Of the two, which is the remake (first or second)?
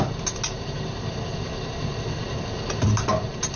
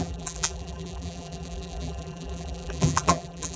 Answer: second